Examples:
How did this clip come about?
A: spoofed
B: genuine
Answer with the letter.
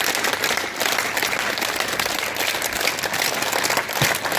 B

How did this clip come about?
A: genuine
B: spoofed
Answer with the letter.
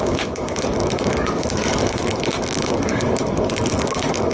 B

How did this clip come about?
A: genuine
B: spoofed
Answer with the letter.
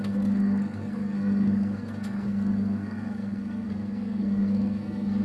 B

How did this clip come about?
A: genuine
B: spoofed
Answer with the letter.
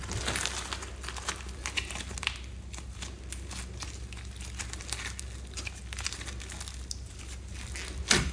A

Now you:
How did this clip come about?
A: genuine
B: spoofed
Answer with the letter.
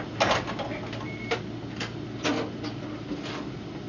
A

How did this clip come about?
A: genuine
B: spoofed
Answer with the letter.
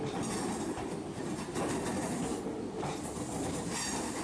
A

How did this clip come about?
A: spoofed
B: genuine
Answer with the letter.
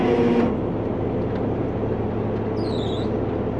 B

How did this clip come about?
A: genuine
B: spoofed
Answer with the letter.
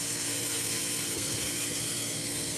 B